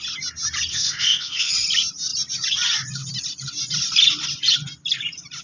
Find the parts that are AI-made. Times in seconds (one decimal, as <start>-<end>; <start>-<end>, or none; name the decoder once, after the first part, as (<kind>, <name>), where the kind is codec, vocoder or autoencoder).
0.7-1.5 (codec, ZipCodec)